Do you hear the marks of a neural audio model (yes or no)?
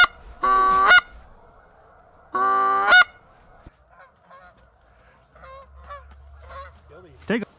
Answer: no